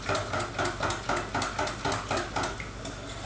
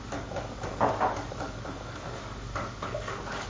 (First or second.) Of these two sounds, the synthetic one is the second